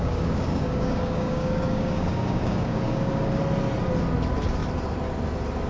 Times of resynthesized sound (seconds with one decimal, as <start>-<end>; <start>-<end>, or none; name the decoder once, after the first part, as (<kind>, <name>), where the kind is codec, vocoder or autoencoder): 0.0-3.4 (codec, DAC)